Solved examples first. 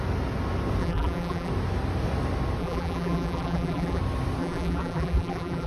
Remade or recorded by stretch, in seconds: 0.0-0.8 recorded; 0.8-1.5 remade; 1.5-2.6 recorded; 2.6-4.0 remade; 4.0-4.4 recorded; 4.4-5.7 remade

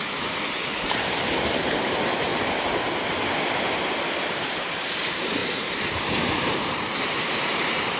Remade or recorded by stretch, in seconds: 0.0-2.3 remade; 2.3-3.6 recorded; 3.6-8.0 remade

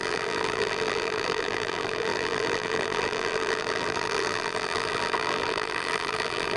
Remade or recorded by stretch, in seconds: 0.0-6.6 remade